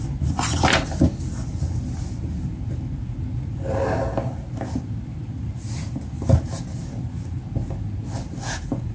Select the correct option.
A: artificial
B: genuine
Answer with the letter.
B